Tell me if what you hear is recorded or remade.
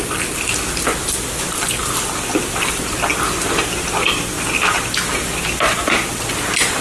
recorded